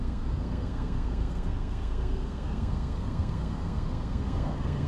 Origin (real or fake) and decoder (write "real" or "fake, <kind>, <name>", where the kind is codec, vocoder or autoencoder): fake, codec, SNAC